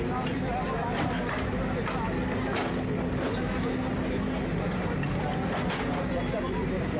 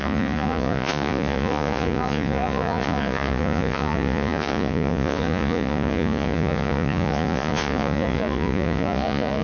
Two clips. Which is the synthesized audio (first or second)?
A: second